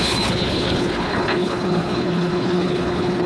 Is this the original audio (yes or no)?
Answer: no